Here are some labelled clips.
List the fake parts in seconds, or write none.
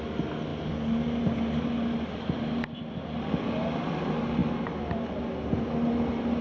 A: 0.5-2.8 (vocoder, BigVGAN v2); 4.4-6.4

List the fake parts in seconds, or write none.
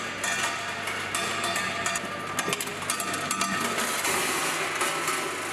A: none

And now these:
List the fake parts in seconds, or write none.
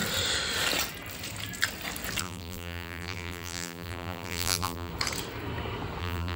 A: 2.2-4.9 (vocoder, BigVGAN v2); 6.0-6.4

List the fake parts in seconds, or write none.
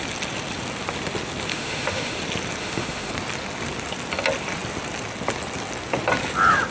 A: 1.5-2.2 (autoencoder, DAC-VAE); 2.6-3.1